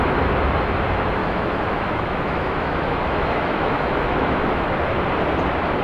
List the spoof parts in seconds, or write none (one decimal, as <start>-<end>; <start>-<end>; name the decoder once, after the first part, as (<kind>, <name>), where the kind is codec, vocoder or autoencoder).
1.2-4.7 (autoencoder, DAC-VAE)